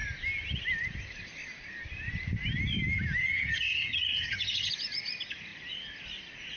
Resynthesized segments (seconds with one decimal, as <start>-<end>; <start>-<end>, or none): 3.2-4.7

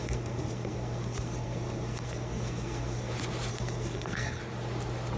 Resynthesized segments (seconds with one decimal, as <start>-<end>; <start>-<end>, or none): 0.0-3.1; 3.5-4.4

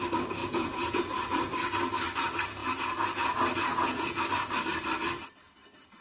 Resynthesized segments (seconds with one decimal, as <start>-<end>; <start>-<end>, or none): 0.4-1.0; 2.6-4.2

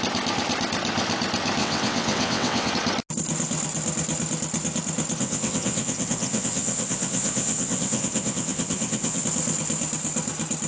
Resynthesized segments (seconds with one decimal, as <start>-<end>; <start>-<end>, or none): 1.6-2.7; 5.2-9.2

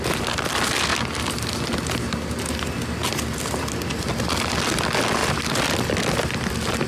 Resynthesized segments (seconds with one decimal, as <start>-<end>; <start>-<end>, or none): 0.9-1.5; 5.2-6.0

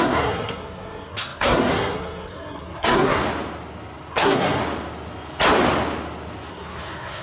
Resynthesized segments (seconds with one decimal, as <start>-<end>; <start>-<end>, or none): 0.0-3.2; 4.1-4.6; 6.5-7.2

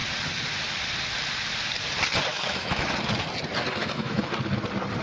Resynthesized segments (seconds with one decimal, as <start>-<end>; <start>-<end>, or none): 2.3-2.9; 3.8-4.3

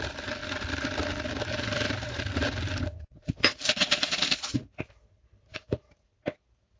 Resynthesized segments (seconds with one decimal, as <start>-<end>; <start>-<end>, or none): 0.0-0.4; 1.5-6.8